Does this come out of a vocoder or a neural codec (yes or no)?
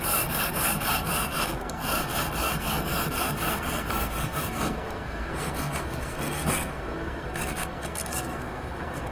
yes